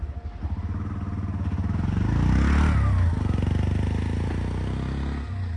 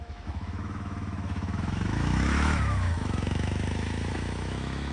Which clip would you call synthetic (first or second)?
second